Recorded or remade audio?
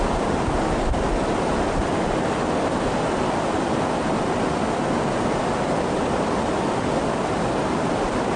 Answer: recorded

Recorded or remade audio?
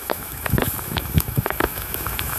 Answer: remade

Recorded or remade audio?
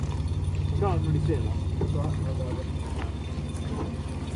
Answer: recorded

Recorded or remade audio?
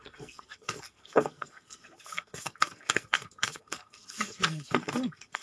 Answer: remade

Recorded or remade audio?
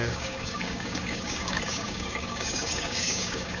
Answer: remade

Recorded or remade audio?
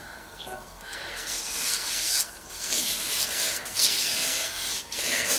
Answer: remade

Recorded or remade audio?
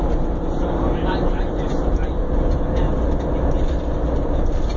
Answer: recorded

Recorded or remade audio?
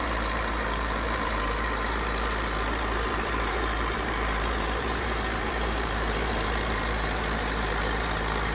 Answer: remade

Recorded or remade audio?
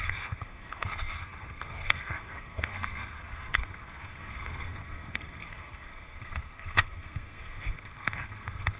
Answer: remade